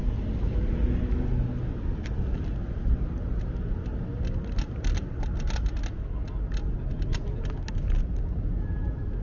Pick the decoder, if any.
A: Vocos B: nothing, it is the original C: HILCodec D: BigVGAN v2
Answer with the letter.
B